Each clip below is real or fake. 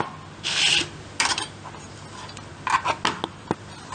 real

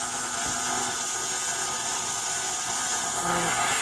real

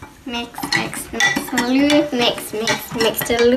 real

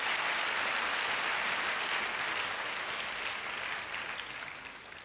real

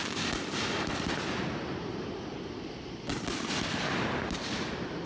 real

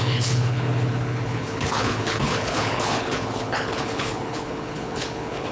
fake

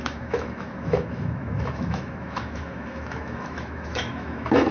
fake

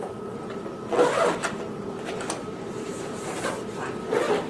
real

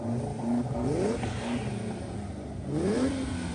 real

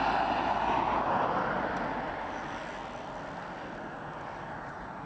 real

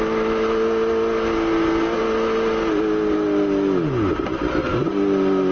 real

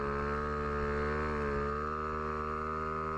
real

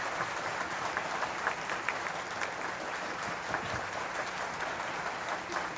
real